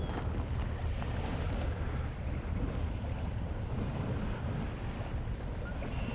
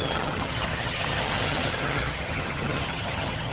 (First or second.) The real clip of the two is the first